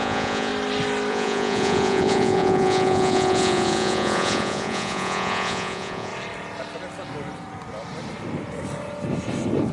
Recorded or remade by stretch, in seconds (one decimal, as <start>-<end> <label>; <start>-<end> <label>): 0.0-0.5 remade; 0.5-1.1 recorded; 1.1-6.1 remade; 6.1-9.7 recorded